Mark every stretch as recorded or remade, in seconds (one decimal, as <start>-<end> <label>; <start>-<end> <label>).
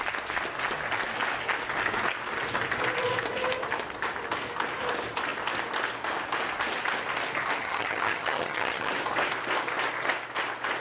0.0-7.6 recorded; 7.6-8.9 remade; 8.9-10.8 recorded